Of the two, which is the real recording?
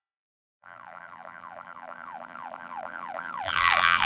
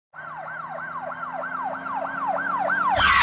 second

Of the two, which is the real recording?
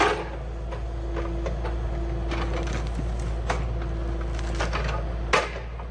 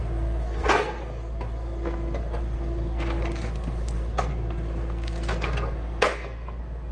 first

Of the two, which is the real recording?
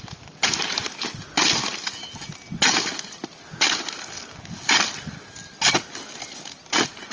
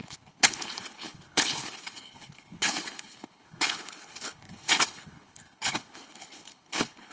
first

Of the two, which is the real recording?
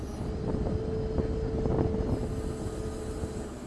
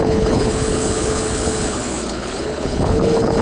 first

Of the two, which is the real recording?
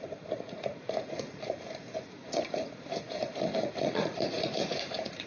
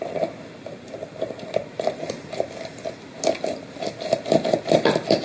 second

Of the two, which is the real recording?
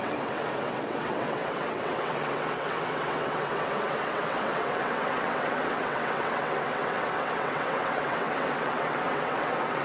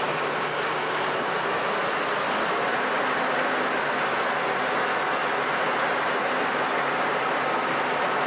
second